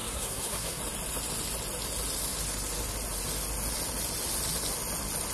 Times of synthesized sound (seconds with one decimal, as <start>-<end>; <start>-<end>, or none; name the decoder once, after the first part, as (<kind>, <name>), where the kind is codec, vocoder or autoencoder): 0.0-0.8 (codec, SNAC)

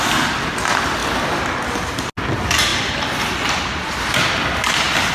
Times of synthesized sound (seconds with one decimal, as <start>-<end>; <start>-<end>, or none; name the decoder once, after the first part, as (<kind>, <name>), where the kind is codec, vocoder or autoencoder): 1.0-1.5 (vocoder, BigVGAN v2); 2.7-5.1

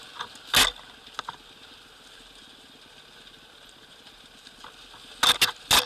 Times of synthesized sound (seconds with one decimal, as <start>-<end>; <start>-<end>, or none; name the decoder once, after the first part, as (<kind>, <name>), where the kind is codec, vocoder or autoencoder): none

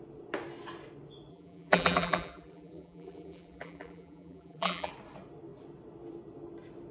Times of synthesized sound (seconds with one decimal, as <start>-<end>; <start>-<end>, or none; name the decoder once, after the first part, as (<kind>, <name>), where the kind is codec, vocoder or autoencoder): 1.3-4.9 (vocoder, BigVGAN v2)

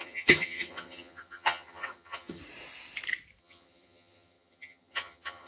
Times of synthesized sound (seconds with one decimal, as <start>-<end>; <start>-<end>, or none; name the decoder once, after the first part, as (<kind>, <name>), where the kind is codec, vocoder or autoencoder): 0.0-2.4 (vocoder, HiFi-GAN); 3.4-5.5

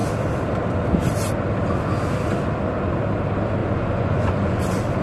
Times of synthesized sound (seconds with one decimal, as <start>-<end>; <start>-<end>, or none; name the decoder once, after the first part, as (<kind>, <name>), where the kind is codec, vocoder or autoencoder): 3.6-4.6 (vocoder, Vocos)

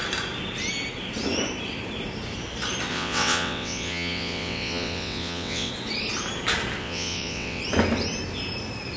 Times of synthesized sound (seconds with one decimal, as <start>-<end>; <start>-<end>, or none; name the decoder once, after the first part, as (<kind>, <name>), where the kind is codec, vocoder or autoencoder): 2.9-5.7 (vocoder, WaveNeXt); 6.8-7.6